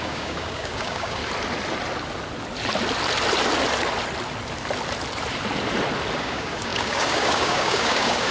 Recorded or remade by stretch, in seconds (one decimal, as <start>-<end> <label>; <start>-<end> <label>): 0.0-1.2 remade; 1.2-6.2 recorded; 6.2-8.3 remade